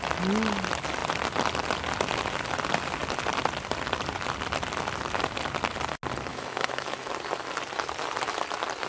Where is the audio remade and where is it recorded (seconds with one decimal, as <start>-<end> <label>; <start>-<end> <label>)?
0.0-6.3 recorded; 6.3-7.1 remade; 7.1-8.9 recorded